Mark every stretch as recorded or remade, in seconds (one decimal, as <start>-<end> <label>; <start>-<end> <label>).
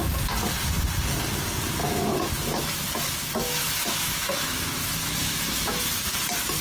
0.0-1.8 recorded; 1.8-5.8 remade; 5.8-6.6 recorded